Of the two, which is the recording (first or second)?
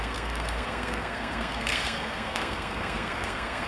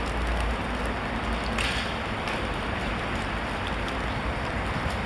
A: second